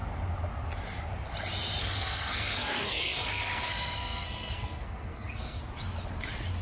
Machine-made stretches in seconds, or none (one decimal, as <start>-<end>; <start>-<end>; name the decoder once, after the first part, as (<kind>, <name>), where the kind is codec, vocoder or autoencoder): 1.8-5.6 (codec, SNAC)